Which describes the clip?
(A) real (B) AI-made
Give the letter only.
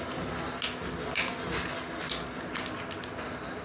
A